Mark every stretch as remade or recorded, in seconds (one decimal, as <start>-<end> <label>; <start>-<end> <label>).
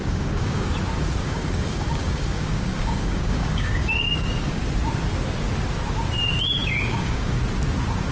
0.0-0.7 remade; 0.7-1.2 recorded; 1.2-4.6 remade; 4.6-6.6 recorded; 6.6-7.4 remade; 7.4-8.1 recorded